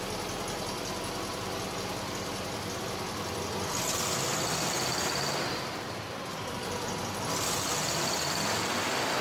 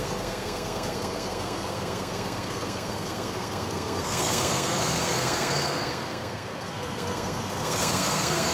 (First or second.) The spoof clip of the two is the second